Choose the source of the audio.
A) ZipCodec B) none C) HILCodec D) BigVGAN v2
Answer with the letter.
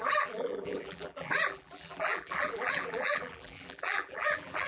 D